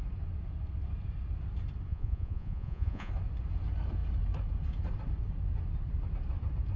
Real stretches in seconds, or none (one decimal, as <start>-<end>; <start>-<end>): 0.0-1.9; 3.1-6.8